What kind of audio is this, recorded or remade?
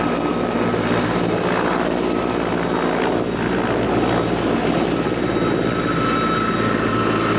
recorded